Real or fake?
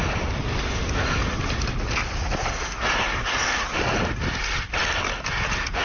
real